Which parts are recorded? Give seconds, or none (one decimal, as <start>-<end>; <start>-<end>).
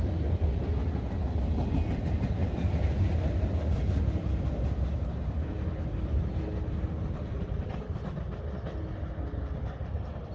0.0-10.3